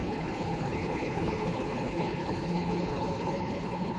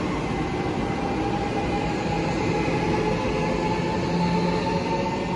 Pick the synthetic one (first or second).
first